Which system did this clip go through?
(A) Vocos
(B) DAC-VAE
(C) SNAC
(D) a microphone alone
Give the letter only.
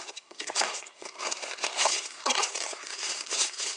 C